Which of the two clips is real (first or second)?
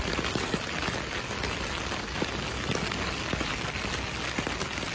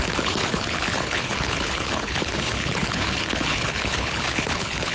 first